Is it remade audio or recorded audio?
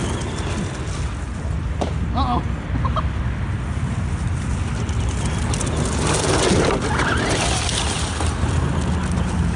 recorded